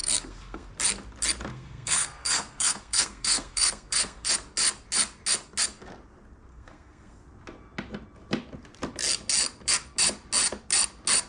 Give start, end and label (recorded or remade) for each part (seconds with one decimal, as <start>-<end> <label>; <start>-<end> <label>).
0.0-0.7 remade; 0.7-1.5 recorded; 1.5-4.3 remade; 4.3-6.5 recorded; 6.5-7.2 remade; 7.2-11.3 recorded